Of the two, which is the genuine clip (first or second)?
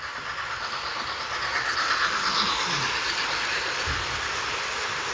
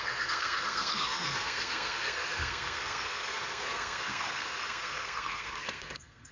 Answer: first